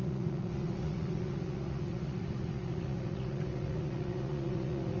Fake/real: fake